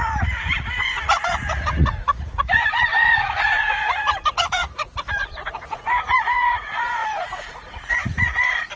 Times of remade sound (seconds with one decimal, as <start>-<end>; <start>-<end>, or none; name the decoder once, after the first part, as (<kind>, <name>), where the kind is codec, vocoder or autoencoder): 0.0-8.8 (vocoder, Vocos)